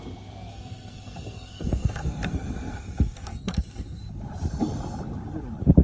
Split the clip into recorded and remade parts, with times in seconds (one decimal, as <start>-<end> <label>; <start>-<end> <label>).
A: 0.0-0.5 recorded; 0.5-4.0 remade; 4.0-5.8 recorded